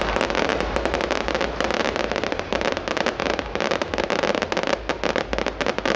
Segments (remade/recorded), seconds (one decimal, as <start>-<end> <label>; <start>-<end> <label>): 0.0-6.0 recorded